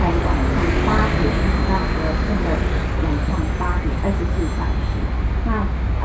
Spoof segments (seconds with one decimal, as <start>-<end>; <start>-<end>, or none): none